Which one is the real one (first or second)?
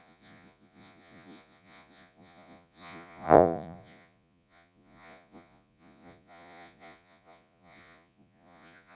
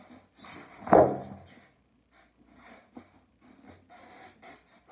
second